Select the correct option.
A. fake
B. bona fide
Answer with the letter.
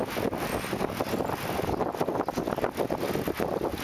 B